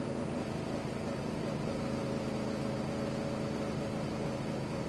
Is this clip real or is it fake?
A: real